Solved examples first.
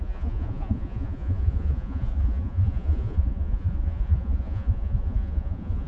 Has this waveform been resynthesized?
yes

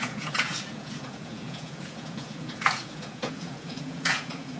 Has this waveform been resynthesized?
yes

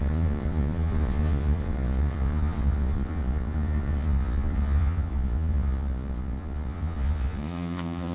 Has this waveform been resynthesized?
yes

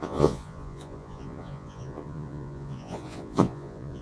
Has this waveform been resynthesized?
yes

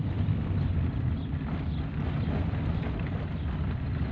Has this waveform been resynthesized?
no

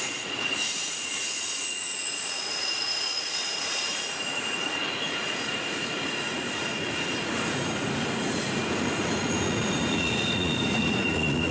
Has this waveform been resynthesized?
yes